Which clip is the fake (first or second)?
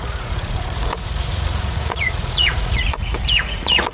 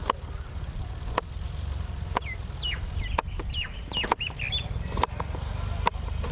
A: first